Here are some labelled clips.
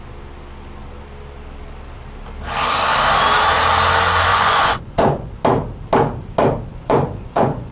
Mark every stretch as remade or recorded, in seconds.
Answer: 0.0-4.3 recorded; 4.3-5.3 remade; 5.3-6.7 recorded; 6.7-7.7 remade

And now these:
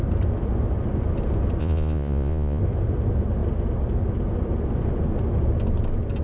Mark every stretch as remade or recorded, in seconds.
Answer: 0.0-1.6 recorded; 1.6-2.6 remade; 2.6-6.2 recorded